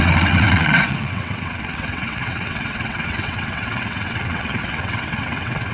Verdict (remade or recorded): remade